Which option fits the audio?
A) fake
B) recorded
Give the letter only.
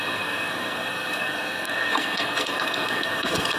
A